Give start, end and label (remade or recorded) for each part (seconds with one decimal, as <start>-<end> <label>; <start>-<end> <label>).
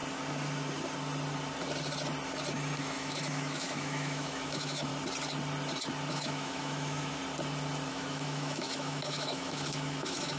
0.0-2.8 recorded; 2.8-4.9 remade; 4.9-6.1 recorded; 6.1-7.2 remade; 7.2-7.9 recorded; 7.9-10.4 remade